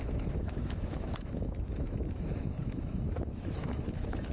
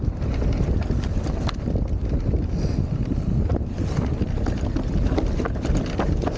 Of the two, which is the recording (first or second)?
second